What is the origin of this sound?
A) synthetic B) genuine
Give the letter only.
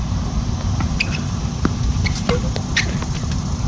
A